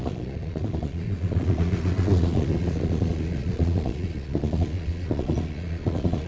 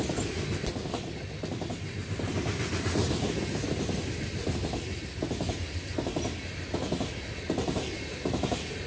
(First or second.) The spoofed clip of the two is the first